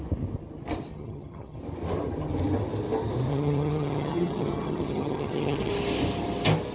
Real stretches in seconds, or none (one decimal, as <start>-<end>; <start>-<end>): 0.0-0.9; 1.6-3.3; 5.7-6.7